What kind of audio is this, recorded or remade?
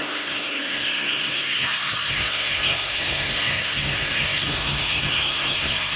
remade